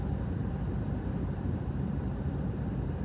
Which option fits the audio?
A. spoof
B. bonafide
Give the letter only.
B